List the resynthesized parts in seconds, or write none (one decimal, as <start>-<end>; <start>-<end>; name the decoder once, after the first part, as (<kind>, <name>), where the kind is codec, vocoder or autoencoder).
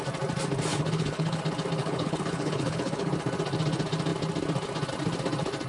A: 0.7-1.4 (codec, HILCodec); 1.8-3.1